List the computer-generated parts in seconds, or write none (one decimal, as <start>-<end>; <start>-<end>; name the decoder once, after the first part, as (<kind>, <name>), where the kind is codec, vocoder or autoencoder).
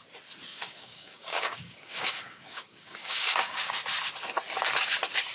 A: 0.5-3.7 (codec, DAC)